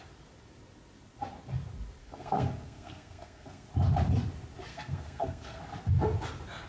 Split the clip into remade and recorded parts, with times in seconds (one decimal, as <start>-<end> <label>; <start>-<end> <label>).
0.0-2.0 recorded; 2.0-3.7 remade; 3.7-4.7 recorded; 4.7-5.6 remade; 5.6-6.7 recorded